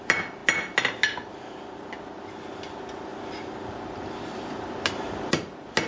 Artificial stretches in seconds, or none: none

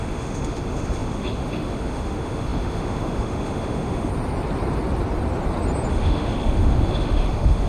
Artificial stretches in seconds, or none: 0.0-4.1 (autoencoder, DAC-VAE); 5.9-7.7

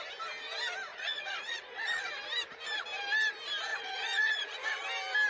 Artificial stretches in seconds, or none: 0.9-2.1 (vocoder, Vocos); 3.7-4.8

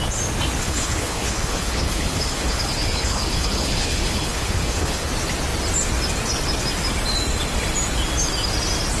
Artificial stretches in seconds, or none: 0.6-5.1 (codec, HILCodec)